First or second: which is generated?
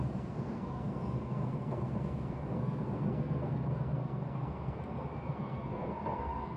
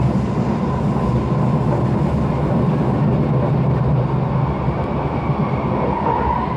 first